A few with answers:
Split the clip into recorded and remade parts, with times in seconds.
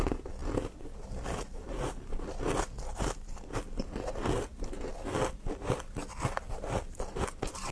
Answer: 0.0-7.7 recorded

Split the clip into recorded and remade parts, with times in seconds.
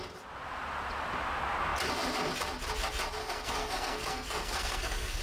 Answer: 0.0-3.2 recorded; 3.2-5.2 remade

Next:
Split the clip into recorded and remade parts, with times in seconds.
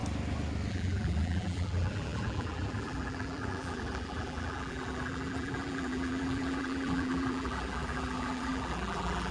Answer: 0.0-0.7 recorded; 0.7-9.3 remade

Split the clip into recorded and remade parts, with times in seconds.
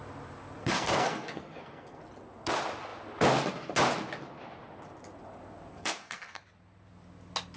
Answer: 0.0-0.6 recorded; 0.6-2.0 remade; 2.0-5.7 recorded; 5.7-6.4 remade; 6.4-7.6 recorded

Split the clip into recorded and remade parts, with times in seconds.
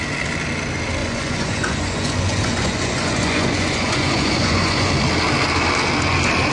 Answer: 0.0-1.0 recorded; 1.0-4.9 remade; 4.9-6.5 recorded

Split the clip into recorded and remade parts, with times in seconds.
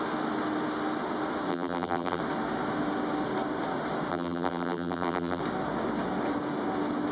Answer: 0.0-1.5 recorded; 1.5-2.2 remade; 2.2-4.1 recorded; 4.1-5.4 remade; 5.4-7.1 recorded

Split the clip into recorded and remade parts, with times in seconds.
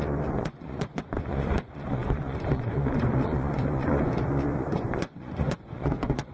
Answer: 0.0-6.3 remade